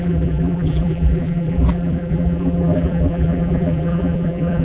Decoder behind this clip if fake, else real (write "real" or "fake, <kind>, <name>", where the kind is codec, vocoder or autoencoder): fake, vocoder, BigVGAN v2